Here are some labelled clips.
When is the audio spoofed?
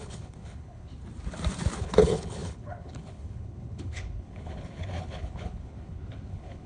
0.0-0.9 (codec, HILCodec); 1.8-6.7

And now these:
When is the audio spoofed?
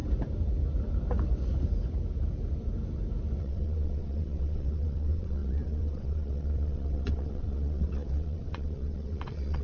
3.4-9.6 (vocoder, WaveNeXt)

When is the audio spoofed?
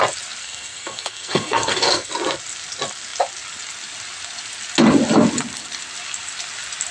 0.4-2.1 (codec, SNAC)